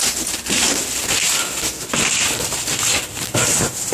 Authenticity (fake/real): real